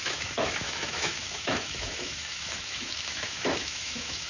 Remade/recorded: remade